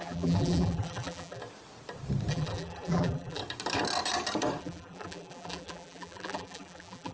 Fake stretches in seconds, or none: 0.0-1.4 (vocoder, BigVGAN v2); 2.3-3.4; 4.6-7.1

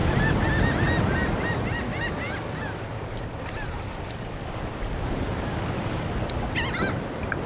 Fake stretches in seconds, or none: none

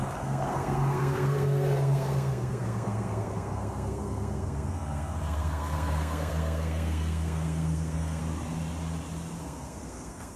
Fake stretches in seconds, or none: 0.0-8.2 (codec, SNAC); 9.4-10.4

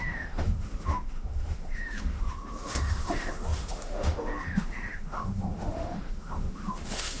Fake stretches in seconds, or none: 0.0-7.2 (autoencoder, DAC-VAE)